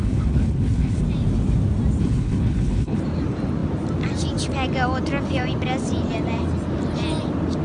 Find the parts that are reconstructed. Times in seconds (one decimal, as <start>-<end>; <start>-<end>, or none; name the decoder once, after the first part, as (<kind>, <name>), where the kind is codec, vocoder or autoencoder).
0.0-1.0 (codec, HILCodec); 2.0-3.0